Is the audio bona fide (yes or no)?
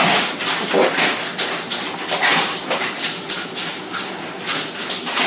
yes